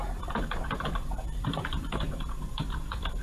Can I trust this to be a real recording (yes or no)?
no